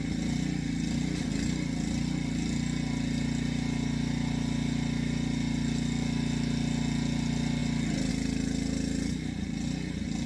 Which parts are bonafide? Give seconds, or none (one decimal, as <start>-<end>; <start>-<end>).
0.0-10.3